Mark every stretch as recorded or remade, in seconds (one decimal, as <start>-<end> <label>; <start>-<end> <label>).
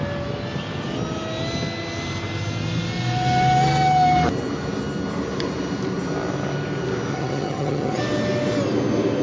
0.0-7.1 recorded; 7.1-8.0 remade; 8.0-9.2 recorded